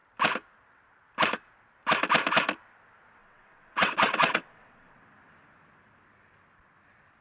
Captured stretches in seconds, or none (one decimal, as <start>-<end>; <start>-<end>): 0.0-3.2; 5.0-7.2